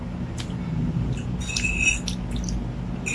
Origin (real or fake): real